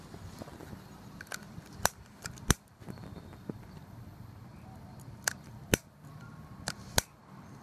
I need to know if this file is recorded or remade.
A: remade